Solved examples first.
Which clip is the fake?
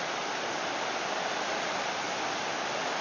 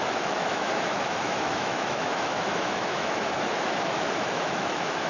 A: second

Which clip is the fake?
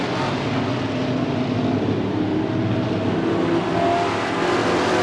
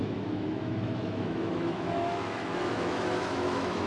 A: second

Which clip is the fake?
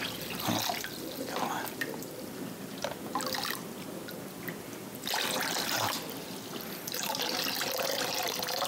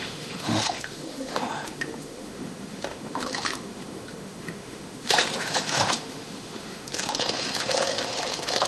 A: second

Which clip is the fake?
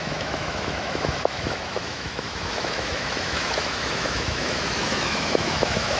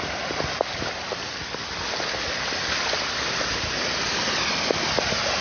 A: first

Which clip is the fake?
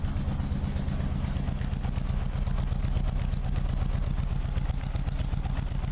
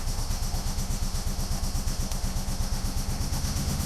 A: second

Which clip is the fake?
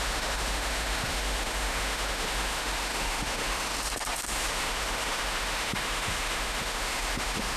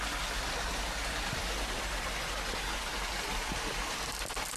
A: first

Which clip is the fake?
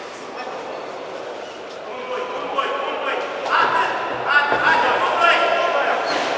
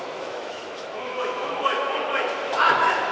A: second